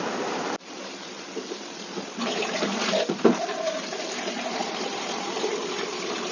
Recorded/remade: remade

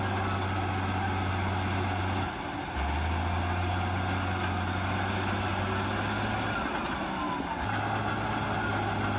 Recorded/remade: recorded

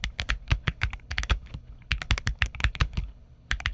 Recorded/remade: remade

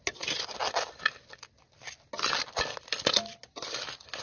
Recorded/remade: recorded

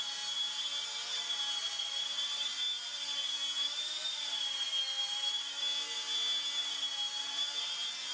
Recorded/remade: remade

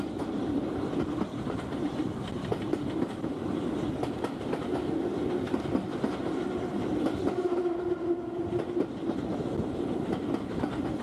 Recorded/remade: recorded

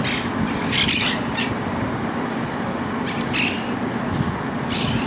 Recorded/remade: recorded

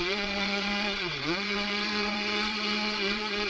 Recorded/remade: remade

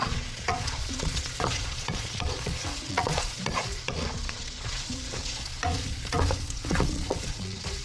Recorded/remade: remade